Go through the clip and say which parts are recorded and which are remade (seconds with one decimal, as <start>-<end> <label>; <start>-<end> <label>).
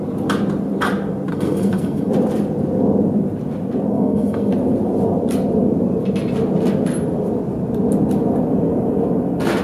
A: 0.0-1.3 recorded; 1.3-2.1 remade; 2.1-3.9 recorded; 3.9-4.5 remade; 4.5-9.6 recorded